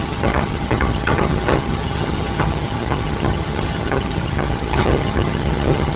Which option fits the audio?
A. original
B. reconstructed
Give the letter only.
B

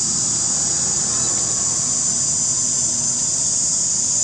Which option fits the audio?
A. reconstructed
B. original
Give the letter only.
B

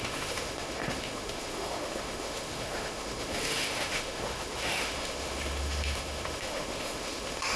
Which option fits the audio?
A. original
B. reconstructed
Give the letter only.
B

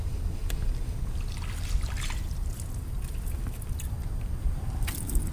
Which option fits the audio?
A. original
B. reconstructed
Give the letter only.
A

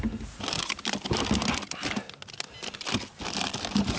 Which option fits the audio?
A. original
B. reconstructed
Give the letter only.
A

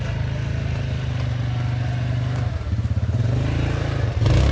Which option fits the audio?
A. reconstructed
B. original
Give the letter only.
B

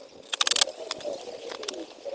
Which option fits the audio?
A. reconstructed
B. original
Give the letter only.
B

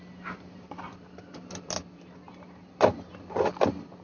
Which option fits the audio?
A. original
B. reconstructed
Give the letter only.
A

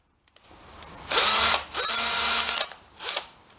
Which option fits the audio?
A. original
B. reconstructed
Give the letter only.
A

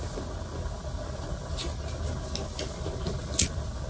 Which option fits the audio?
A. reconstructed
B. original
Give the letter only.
B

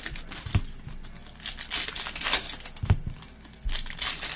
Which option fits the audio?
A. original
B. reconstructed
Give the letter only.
A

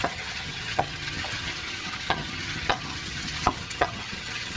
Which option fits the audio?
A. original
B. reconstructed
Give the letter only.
B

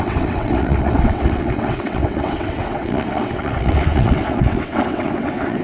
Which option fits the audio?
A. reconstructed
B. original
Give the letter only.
A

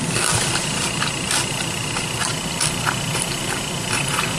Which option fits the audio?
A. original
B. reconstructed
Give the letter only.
A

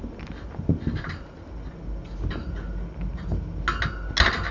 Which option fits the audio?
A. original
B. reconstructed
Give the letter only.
A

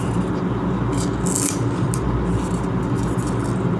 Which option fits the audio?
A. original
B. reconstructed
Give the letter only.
A